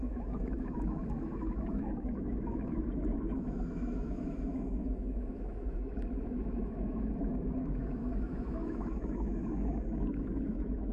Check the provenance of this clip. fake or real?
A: fake